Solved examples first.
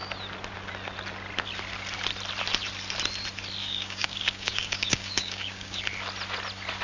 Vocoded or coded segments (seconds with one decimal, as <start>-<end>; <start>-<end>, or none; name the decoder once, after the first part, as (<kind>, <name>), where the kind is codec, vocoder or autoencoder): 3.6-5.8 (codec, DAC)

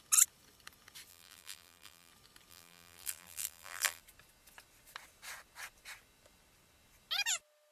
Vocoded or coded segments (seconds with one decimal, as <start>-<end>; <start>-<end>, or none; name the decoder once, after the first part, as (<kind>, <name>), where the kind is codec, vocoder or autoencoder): 1.1-2.1 (vocoder, BigVGAN v2); 2.5-4.0

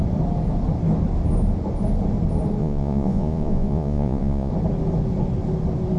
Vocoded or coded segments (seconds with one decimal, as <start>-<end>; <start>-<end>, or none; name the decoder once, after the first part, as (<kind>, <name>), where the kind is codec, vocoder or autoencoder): 2.6-4.5 (vocoder, Vocos)

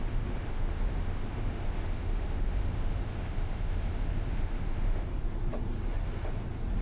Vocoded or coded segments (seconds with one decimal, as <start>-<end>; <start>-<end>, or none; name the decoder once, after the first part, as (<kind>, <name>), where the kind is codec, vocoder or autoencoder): 0.0-5.1 (autoencoder, DAC-VAE)

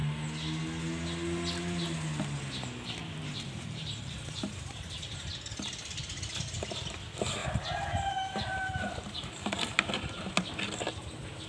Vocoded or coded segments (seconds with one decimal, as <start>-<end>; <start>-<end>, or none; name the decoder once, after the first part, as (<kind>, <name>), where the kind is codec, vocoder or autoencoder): 3.1-6.0 (vocoder, BigVGAN v2); 7.4-10.3

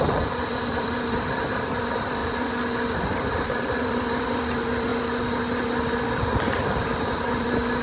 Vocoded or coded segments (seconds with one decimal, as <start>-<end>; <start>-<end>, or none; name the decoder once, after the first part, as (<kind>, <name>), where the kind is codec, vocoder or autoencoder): 0.0-2.2 (vocoder, BigVGAN v2); 3.4-4.9; 6.4-7.8

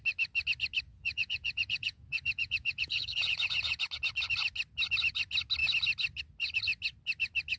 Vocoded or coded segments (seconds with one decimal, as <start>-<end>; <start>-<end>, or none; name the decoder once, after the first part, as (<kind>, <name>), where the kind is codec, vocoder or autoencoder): 0.9-3.8 (vocoder, Vocos)

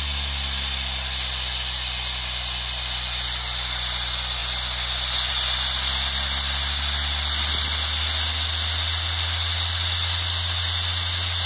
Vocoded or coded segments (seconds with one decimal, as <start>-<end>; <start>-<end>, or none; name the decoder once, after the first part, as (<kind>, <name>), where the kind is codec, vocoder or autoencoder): none